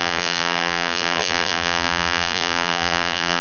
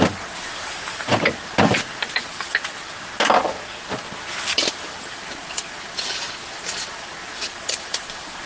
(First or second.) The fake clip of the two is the first